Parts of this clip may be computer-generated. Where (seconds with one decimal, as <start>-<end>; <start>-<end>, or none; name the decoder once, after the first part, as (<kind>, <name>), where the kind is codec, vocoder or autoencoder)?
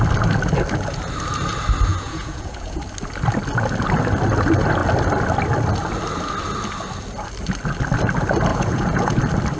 1.9-2.8 (vocoder, Vocos); 8.5-9.2